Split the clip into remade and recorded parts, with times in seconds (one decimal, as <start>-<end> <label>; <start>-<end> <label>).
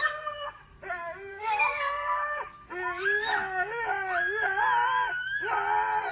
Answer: 0.0-0.6 remade; 0.6-1.3 recorded; 1.3-2.4 remade; 2.4-6.1 recorded